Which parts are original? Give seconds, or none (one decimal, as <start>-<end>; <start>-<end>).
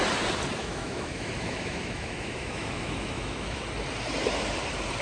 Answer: 0.0-0.6; 3.6-5.0